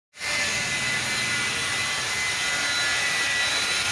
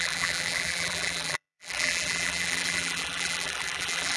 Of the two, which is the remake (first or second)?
second